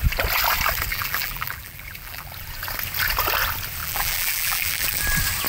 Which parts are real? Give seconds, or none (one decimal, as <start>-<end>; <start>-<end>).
0.0-0.9; 2.3-3.8; 5.0-5.5

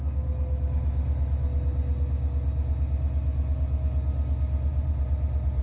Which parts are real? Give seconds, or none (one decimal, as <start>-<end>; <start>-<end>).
0.0-4.7

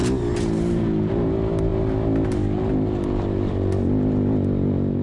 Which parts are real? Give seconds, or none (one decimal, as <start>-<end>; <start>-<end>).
0.0-5.0

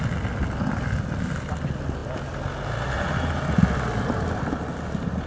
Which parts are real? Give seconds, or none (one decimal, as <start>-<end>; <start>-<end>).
0.0-5.3